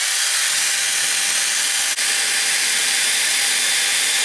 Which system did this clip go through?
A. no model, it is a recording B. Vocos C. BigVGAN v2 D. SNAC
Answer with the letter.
A